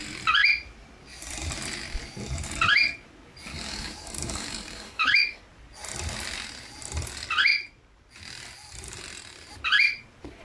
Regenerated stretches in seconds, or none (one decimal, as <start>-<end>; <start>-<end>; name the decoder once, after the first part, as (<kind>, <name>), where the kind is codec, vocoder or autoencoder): 3.5-5.4 (codec, DAC)